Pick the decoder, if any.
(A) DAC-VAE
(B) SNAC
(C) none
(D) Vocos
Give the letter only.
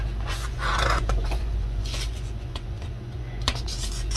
D